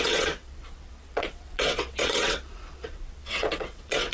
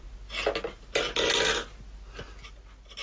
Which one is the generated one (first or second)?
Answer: first